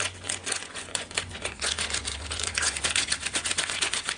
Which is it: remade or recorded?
remade